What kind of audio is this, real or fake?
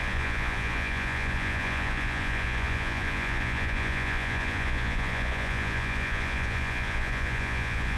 fake